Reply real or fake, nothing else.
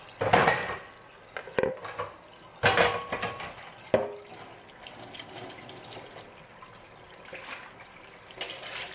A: real